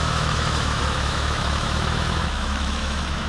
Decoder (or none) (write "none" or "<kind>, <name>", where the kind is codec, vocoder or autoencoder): autoencoder, DAC-VAE